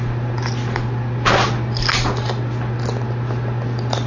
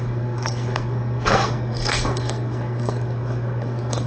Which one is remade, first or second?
second